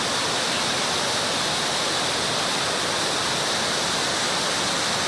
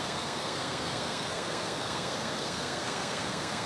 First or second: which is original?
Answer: first